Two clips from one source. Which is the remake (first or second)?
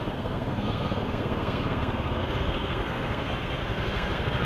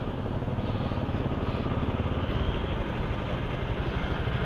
first